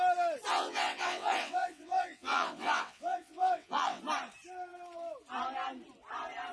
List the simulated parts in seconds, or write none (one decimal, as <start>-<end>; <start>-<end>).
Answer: 0.5-4.0